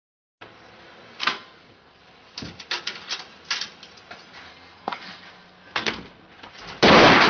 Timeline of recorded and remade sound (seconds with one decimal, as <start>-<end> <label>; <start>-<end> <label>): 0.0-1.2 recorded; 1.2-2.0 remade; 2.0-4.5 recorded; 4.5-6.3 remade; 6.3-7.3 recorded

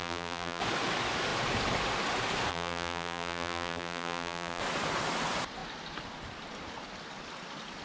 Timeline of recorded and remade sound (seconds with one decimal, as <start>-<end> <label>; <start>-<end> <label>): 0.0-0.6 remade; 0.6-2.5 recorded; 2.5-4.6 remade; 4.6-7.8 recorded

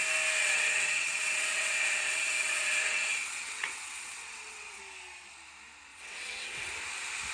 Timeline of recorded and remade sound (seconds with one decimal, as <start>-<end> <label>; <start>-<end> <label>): 0.0-0.4 recorded; 0.4-4.8 remade; 4.8-5.9 recorded; 5.9-6.7 remade; 6.7-7.3 recorded

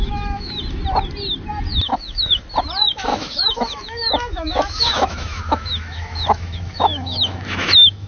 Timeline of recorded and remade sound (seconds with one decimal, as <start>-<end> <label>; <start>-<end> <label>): 0.0-0.6 remade; 0.6-1.7 recorded; 1.7-2.4 remade; 2.4-3.1 recorded; 3.1-8.1 remade